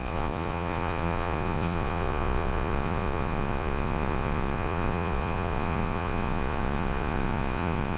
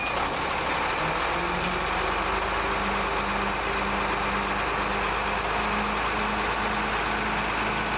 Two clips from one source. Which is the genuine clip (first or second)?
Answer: second